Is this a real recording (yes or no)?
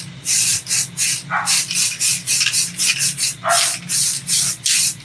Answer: yes